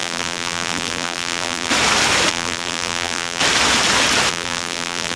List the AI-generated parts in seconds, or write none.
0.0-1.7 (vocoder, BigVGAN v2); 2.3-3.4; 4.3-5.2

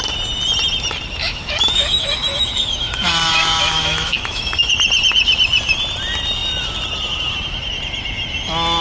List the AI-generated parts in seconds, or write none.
1.2-4.7 (autoencoder, DAC-VAE)

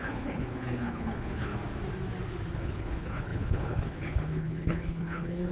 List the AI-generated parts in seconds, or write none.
0.0-1.5 (codec, HILCodec); 2.5-5.5